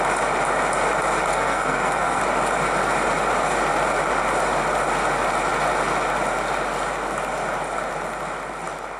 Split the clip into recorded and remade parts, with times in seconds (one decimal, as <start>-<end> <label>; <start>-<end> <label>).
0.0-1.3 recorded; 1.3-2.2 remade; 2.2-9.0 recorded